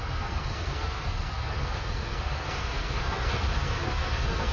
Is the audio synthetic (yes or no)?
yes